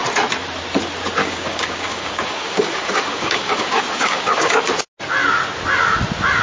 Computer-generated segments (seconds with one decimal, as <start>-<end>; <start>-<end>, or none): 1.2-4.6